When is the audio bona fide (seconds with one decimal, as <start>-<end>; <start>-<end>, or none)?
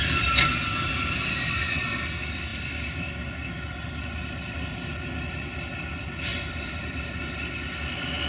0.0-6.3; 7.2-8.3